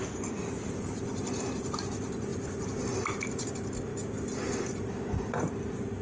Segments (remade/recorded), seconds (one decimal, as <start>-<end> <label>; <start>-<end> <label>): 0.0-0.4 recorded; 0.4-1.1 remade; 1.1-6.0 recorded